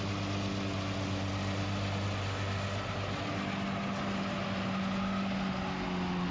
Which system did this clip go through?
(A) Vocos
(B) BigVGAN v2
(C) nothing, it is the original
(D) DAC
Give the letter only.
C